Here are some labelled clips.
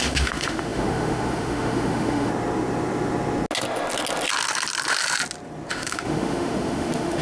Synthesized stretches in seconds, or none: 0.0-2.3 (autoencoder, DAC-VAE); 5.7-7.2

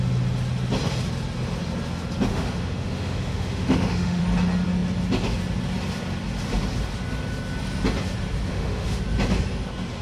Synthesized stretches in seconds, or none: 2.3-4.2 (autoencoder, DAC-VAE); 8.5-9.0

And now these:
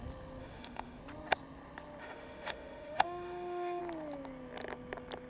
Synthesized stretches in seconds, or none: 0.4-1.0 (autoencoder, DAC-VAE); 2.0-3.8

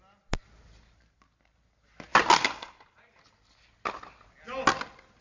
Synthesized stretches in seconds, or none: none